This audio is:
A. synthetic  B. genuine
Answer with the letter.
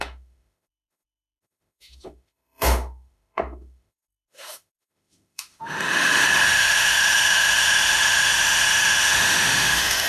A